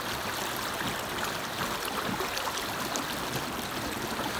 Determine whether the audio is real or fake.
real